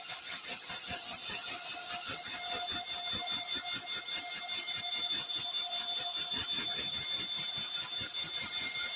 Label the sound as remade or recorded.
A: recorded